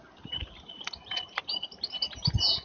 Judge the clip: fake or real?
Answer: real